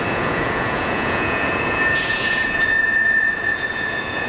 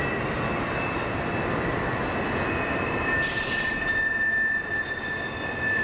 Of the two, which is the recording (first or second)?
second